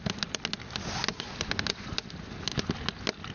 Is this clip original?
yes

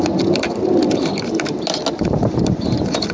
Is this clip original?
yes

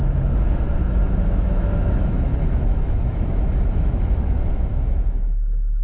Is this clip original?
no